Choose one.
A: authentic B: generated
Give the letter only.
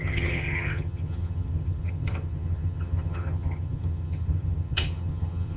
B